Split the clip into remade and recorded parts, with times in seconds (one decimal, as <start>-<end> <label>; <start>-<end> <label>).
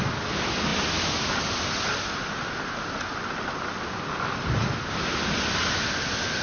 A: 0.0-6.4 recorded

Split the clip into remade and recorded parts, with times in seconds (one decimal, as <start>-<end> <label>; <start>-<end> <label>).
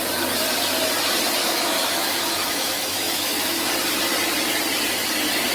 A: 0.0-1.4 recorded; 1.4-3.7 remade; 3.7-5.5 recorded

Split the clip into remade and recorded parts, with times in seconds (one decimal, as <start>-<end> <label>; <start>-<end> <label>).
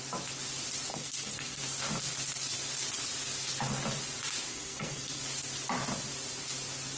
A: 0.0-0.9 recorded; 0.9-1.6 remade; 1.6-4.5 recorded; 4.5-5.2 remade; 5.2-7.0 recorded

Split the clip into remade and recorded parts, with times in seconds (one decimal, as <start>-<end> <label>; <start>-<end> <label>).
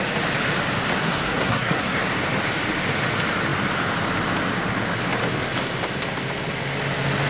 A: 0.0-1.0 recorded; 1.0-2.0 remade; 2.0-7.3 recorded